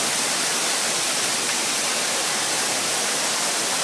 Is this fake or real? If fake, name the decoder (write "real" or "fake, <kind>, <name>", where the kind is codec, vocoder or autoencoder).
real